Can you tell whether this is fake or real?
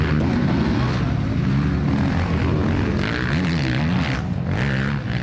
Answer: real